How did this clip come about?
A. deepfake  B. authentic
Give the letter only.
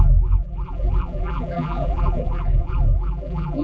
A